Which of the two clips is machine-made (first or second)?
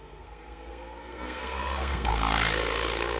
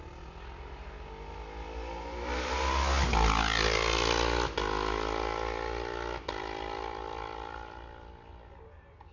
first